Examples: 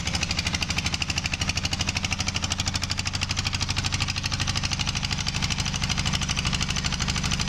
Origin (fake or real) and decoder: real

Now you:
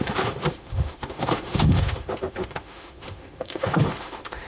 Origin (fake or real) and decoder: fake, autoencoder, DAC-VAE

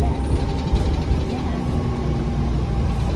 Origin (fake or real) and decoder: real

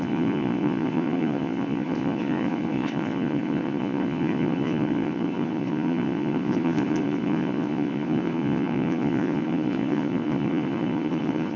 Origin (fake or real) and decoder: fake, vocoder, Vocos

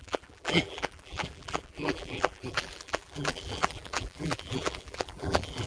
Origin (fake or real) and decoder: fake, vocoder, BigVGAN v2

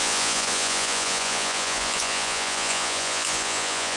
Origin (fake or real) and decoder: fake, vocoder, Vocos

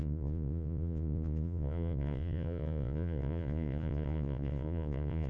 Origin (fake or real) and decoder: fake, vocoder, Vocos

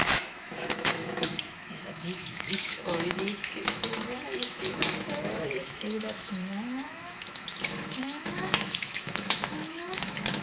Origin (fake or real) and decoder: fake, autoencoder, DAC-VAE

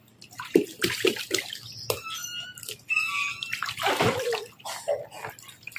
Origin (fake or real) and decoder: real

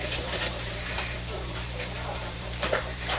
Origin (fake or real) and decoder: fake, vocoder, BigVGAN v2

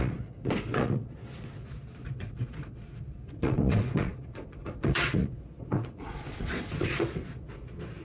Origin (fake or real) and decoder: fake, vocoder, Vocos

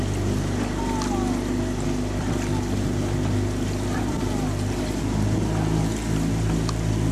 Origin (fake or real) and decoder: real